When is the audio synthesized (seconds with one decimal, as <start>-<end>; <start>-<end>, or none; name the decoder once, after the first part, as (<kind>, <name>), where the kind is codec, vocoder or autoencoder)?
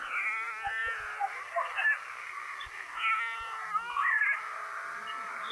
none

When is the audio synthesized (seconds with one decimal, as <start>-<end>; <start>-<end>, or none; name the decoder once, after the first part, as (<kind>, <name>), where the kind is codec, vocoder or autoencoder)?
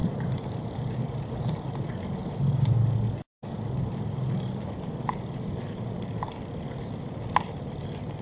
0.0-1.2 (vocoder, BigVGAN v2); 2.2-2.8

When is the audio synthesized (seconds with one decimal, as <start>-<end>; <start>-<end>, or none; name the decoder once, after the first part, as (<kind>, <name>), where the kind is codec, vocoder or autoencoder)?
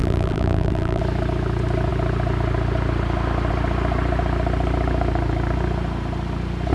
0.0-1.0 (vocoder, BigVGAN v2)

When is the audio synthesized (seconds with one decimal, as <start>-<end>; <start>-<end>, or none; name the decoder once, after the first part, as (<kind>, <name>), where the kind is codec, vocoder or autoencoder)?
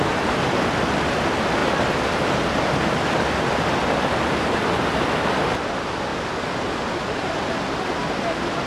none